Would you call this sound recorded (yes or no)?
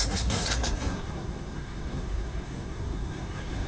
no